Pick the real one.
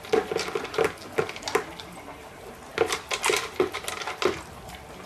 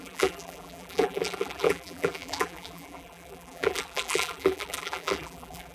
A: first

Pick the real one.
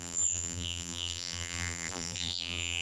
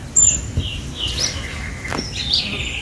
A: second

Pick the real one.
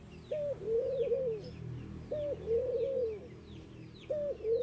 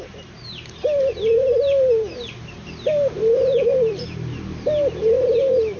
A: first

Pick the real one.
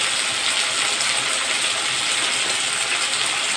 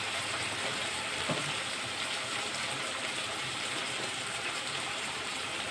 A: first